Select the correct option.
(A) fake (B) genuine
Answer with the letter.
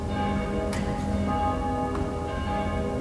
B